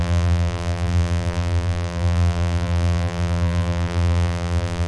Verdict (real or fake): fake